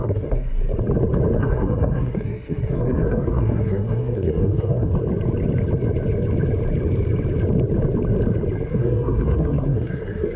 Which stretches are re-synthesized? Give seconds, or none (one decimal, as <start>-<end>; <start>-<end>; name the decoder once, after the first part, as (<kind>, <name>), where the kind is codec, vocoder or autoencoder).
0.0-0.6 (codec, SNAC); 1.4-4.9; 8.7-10.4